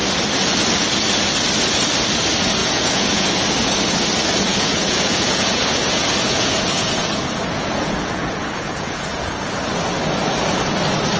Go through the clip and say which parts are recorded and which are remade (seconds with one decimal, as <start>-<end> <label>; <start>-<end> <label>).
0.0-2.6 recorded; 2.6-3.3 remade; 3.3-4.5 recorded; 4.5-9.6 remade; 9.6-11.2 recorded